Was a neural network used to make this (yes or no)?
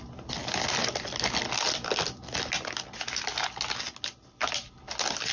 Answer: no